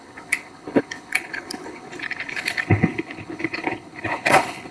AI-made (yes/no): yes